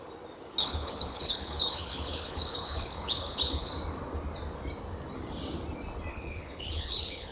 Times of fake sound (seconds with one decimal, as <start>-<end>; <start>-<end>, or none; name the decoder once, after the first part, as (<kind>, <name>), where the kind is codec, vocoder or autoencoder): 0.6-3.7 (codec, HILCodec); 6.1-7.3